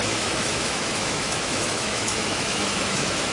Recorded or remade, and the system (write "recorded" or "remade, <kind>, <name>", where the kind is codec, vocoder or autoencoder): remade, autoencoder, DAC-VAE